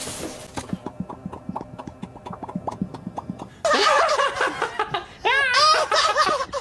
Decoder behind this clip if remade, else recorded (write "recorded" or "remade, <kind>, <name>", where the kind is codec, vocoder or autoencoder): recorded